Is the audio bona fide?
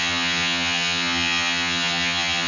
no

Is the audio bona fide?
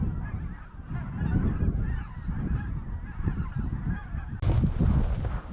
yes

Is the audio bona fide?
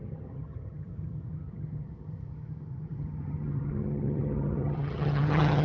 no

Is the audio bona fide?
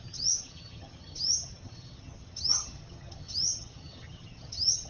no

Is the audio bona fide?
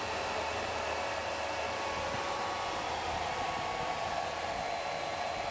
yes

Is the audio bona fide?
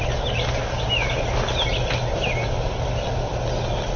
yes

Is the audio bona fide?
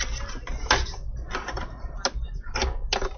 yes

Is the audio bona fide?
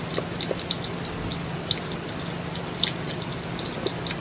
yes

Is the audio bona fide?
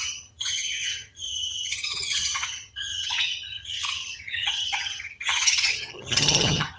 no